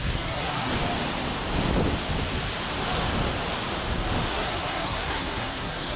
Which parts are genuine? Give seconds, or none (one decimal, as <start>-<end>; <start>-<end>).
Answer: 0.7-4.3